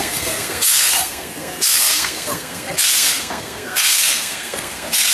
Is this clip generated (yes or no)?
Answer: yes